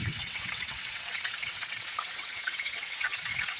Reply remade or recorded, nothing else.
remade